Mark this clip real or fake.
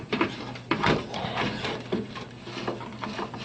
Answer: fake